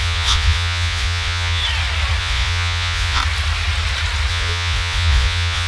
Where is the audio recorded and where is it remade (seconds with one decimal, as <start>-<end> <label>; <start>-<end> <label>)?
0.0-1.6 remade; 1.6-2.2 recorded; 2.2-3.2 remade; 3.2-4.3 recorded; 4.3-5.7 remade